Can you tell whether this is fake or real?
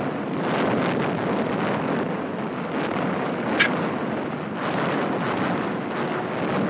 real